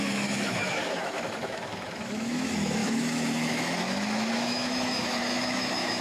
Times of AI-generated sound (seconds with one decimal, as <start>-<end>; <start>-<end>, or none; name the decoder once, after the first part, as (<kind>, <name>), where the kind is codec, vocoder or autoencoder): 0.0-6.0 (autoencoder, DAC-VAE)